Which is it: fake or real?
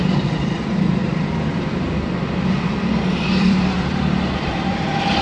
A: fake